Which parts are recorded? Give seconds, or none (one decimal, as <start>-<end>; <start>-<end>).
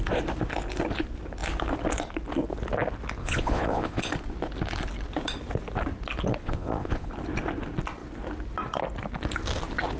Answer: 0.0-3.2; 4.1-6.4; 7.1-10.0